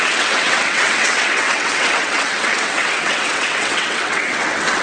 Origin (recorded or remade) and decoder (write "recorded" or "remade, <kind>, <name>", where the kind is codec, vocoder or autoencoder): remade, vocoder, WaveNeXt